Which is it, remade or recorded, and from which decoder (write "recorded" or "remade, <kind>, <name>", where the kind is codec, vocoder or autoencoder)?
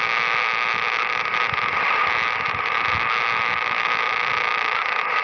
recorded